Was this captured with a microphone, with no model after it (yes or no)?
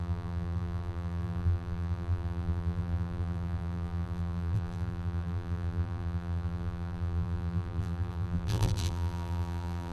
no